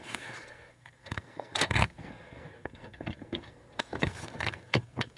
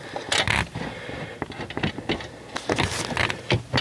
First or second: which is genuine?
second